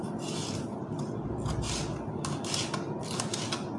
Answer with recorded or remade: recorded